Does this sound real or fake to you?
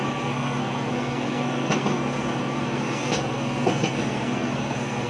fake